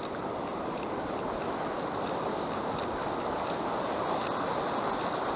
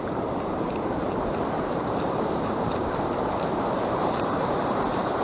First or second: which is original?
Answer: first